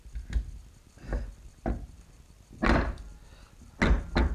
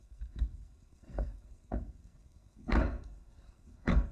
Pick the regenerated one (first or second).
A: second